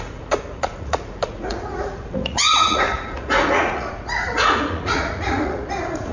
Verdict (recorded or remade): remade